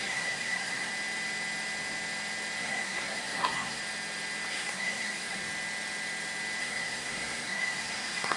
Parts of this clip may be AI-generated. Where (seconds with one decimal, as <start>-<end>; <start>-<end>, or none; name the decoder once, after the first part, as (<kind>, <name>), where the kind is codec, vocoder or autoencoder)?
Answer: 0.0-0.9 (codec, SNAC); 2.6-3.8; 4.5-5.4; 6.6-8.4